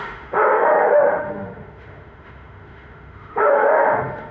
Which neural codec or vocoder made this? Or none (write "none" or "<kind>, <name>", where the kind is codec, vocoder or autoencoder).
autoencoder, DAC-VAE